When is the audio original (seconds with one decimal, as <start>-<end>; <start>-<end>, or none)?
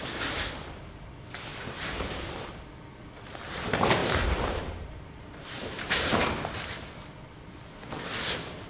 0.0-1.5; 2.6-4.0; 6.1-8.7